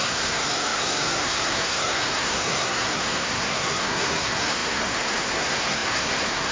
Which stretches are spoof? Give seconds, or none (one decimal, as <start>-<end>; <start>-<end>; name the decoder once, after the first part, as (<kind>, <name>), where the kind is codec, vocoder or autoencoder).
0.0-6.5 (codec, SNAC)